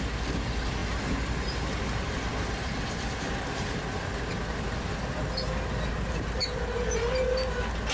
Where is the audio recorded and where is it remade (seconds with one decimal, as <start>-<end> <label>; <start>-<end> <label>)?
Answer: 0.0-7.9 recorded